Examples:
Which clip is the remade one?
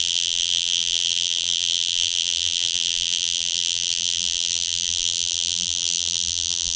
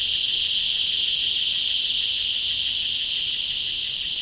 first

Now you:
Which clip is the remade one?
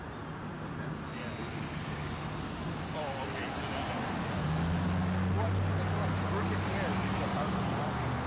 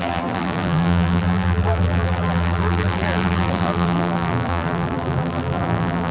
second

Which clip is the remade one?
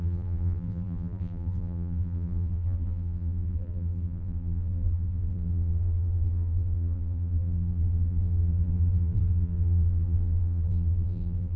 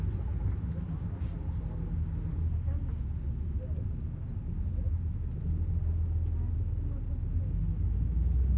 first